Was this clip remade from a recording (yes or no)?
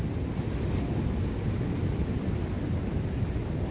no